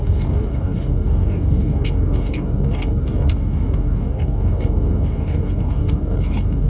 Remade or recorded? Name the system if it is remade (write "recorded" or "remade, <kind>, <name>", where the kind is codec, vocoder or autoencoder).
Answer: remade, codec, DAC